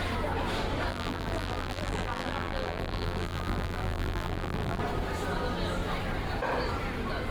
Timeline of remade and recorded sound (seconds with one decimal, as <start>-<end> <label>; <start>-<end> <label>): 0.0-0.9 recorded; 0.9-4.8 remade; 4.8-7.3 recorded